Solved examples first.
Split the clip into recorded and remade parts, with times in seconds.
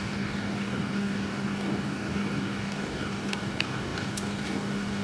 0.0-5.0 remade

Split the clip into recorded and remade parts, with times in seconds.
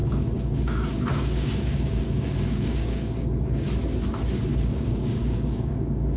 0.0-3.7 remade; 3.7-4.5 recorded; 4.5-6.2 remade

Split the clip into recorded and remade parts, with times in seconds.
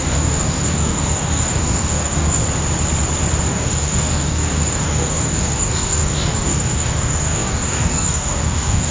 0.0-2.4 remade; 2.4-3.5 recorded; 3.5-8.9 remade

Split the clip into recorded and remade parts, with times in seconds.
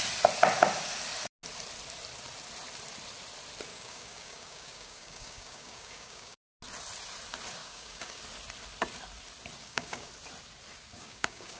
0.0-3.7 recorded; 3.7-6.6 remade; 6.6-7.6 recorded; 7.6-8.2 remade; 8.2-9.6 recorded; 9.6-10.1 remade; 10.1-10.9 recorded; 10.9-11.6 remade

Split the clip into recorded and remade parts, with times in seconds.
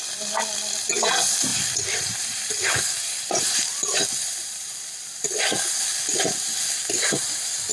0.0-7.7 recorded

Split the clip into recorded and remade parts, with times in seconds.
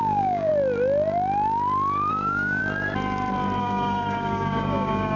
0.0-0.5 remade; 0.5-2.1 recorded; 2.1-2.6 remade; 2.6-3.6 recorded; 3.6-5.2 remade